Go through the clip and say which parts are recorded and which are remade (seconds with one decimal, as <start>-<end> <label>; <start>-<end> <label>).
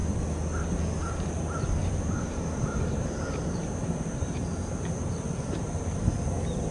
0.0-1.8 recorded; 1.8-5.8 remade; 5.8-6.7 recorded